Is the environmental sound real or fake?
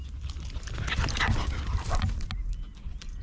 real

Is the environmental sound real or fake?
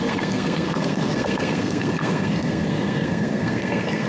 fake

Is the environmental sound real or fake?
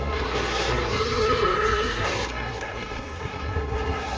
fake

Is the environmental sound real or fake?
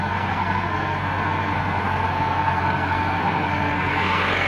fake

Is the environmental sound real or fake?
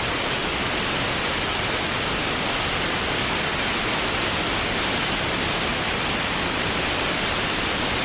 real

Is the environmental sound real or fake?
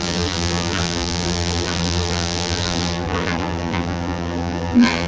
fake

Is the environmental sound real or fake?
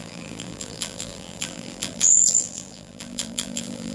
fake